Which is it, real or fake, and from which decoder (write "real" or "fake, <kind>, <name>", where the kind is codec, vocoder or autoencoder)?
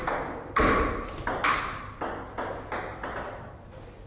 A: real